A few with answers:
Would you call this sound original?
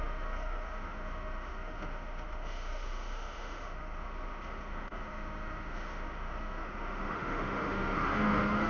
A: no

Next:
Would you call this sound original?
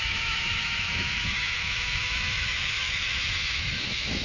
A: no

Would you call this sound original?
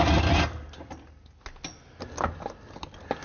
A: yes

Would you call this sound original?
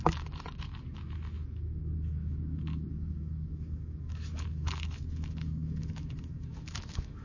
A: no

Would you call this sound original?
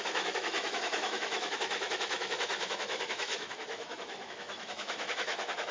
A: no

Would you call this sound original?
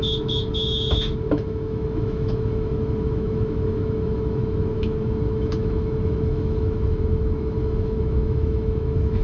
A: no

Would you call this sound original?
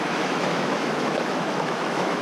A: no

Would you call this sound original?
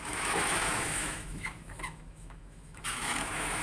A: no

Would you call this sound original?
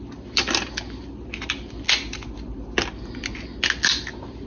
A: yes